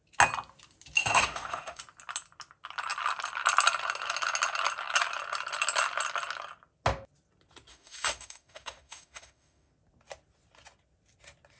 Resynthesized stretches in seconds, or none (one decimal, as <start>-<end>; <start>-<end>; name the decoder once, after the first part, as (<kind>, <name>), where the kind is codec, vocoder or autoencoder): 1.0-1.8 (autoencoder, DAC-VAE); 7.7-9.7